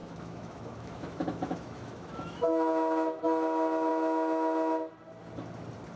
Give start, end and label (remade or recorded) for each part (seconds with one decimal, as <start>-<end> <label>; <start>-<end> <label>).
0.0-3.2 remade; 3.2-3.9 recorded; 3.9-4.9 remade; 4.9-6.0 recorded

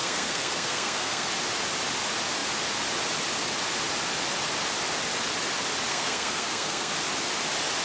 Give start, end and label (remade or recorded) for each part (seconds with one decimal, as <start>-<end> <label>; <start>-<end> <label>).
0.0-1.3 remade; 1.3-5.9 recorded; 5.9-6.9 remade; 6.9-7.8 recorded

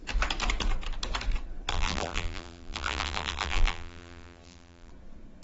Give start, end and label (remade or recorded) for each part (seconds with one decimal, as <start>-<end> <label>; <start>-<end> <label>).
0.0-1.7 recorded; 1.7-4.9 remade; 4.9-5.4 recorded

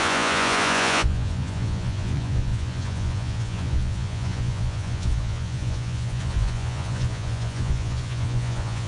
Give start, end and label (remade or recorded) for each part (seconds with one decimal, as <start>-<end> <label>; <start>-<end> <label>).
0.0-8.9 remade

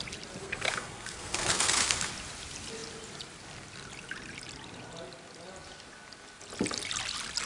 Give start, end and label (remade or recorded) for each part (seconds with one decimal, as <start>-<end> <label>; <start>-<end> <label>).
0.0-0.4 recorded; 0.4-2.1 remade; 2.1-7.5 recorded

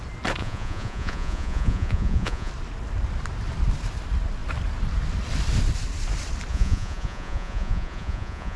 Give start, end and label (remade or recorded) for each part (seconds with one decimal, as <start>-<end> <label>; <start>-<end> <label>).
0.0-0.4 recorded; 0.4-2.5 remade; 2.5-6.5 recorded; 6.5-8.6 remade

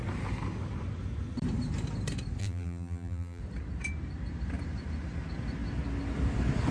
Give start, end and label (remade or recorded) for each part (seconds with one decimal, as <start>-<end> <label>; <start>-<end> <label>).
0.0-2.4 recorded; 2.4-3.4 remade; 3.4-6.7 recorded